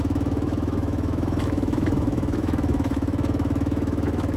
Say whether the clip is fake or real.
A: fake